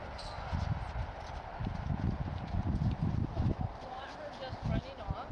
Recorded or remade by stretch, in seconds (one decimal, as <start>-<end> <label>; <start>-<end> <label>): 0.0-0.7 remade; 0.7-1.5 recorded; 1.5-4.7 remade; 4.7-5.3 recorded